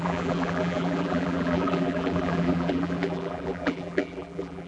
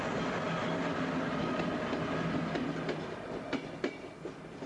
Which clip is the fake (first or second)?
first